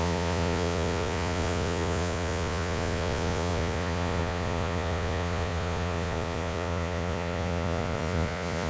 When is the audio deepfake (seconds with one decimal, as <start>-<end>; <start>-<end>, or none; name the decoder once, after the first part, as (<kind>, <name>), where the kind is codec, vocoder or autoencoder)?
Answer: 0.0-8.7 (vocoder, Vocos)

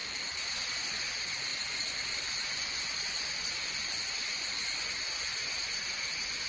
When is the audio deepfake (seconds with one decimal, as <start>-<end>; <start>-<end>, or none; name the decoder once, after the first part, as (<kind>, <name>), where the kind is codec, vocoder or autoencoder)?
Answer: 0.7-1.5 (vocoder, Vocos); 2.1-6.5

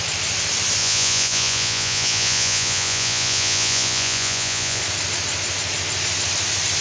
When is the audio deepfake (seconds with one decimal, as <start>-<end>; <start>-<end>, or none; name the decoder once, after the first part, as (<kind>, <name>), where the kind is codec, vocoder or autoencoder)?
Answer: 0.8-4.8 (vocoder, Vocos)

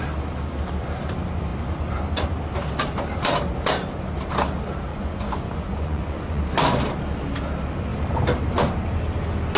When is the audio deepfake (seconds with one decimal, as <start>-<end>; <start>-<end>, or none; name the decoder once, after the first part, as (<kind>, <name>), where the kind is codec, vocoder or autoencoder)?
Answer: 4.9-6.4 (vocoder, Vocos)

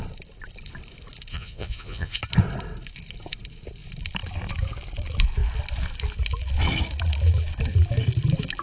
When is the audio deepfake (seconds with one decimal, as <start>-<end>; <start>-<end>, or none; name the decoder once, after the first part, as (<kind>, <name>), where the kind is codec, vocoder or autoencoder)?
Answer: 1.3-2.2 (vocoder, Vocos)

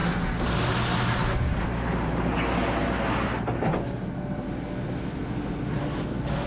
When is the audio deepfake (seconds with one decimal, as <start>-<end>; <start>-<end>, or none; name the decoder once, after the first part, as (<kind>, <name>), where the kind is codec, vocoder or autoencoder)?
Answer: none